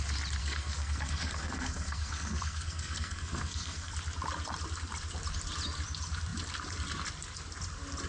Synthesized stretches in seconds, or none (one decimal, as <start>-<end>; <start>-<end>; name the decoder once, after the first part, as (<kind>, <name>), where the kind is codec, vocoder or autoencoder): 0.4-3.9 (codec, SNAC)